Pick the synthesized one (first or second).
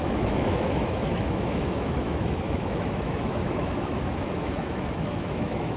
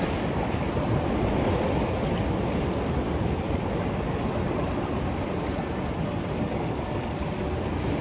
first